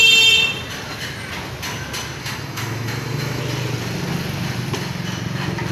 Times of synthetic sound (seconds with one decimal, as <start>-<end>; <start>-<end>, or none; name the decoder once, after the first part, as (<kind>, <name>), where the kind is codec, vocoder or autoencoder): 2.2-3.4 (autoencoder, DAC-VAE)